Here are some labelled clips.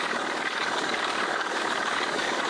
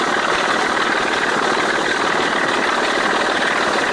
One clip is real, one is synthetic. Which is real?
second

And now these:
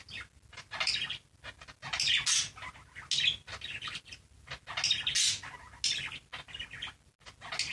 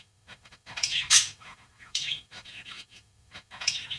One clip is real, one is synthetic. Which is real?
first